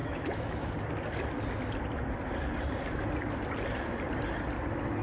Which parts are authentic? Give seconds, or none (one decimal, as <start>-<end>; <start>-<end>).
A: 0.7-5.0

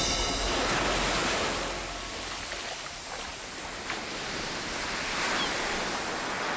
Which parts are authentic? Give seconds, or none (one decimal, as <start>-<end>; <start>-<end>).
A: 0.0-6.6

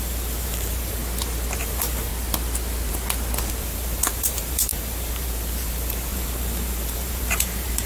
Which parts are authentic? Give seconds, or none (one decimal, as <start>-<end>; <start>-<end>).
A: 1.0-1.6; 2.1-3.6

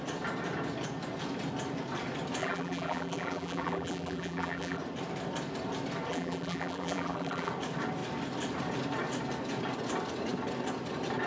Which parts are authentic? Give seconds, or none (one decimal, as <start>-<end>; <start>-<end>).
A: 0.0-2.4; 4.8-6.1; 7.5-11.3

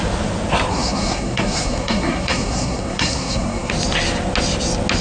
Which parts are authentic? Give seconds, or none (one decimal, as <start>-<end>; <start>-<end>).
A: 0.0-0.7; 3.7-5.0

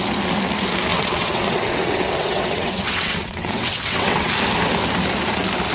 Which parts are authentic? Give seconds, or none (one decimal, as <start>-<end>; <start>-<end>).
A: 0.0-0.9; 4.3-5.7

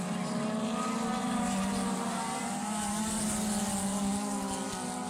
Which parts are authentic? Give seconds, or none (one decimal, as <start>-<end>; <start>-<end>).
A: 0.0-5.1

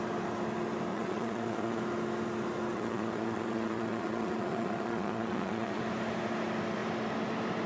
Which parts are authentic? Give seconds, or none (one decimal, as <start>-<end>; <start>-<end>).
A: 0.0-0.9; 1.8-2.7; 5.8-7.7